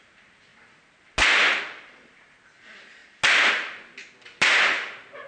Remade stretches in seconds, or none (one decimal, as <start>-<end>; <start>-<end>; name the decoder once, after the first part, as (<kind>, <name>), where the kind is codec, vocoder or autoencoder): none